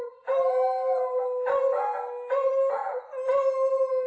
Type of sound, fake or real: real